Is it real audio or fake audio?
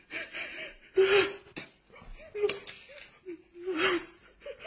real